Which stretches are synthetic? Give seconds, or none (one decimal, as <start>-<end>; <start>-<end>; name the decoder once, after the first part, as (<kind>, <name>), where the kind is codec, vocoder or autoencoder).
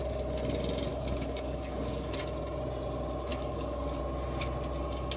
0.9-2.2 (codec, DAC); 3.3-4.0